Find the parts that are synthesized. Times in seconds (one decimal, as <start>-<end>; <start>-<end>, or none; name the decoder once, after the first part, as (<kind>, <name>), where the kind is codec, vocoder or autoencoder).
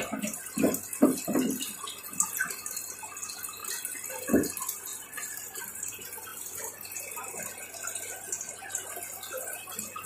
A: none